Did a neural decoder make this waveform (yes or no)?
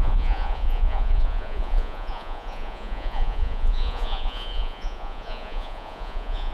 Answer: yes